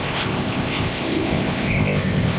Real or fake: fake